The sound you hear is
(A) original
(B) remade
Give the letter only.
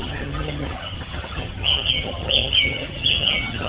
B